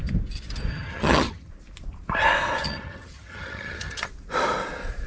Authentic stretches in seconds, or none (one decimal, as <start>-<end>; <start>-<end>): 0.0-0.7; 1.5-2.6; 4.1-5.1